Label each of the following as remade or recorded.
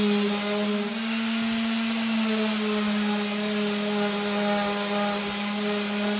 recorded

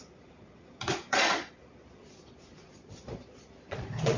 remade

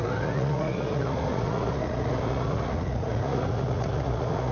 remade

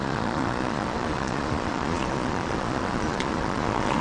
remade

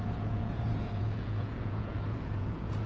remade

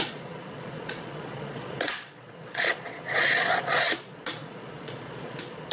remade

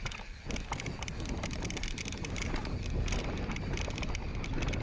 recorded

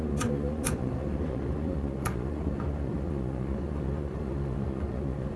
remade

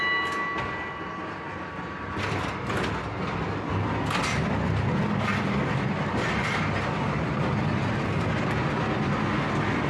recorded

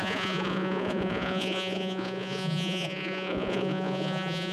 remade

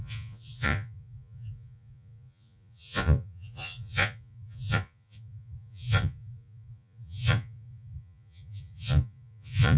remade